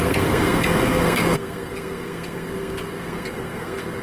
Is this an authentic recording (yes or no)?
no